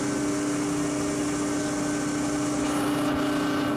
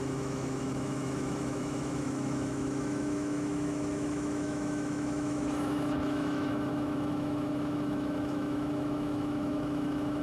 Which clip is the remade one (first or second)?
second